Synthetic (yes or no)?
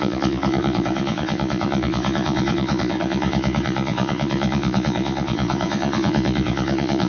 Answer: yes